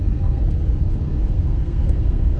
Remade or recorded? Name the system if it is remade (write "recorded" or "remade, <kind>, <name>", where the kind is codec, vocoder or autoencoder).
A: remade, codec, SNAC